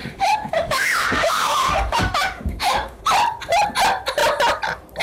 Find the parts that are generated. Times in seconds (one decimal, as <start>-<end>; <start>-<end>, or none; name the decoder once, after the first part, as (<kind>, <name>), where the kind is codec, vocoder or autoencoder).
0.0-3.0 (autoencoder, DAC-VAE)